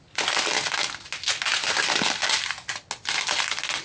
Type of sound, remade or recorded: recorded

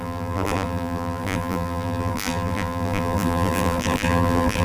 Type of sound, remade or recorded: remade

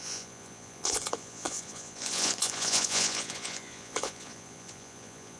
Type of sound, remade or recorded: remade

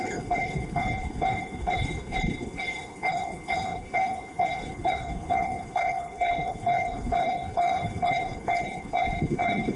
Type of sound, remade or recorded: remade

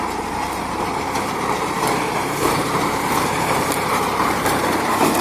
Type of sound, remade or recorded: remade